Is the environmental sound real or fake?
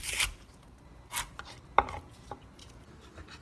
fake